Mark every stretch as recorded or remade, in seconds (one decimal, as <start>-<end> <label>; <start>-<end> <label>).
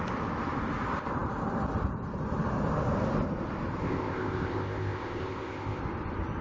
0.0-3.8 recorded; 3.8-5.8 remade; 5.8-6.4 recorded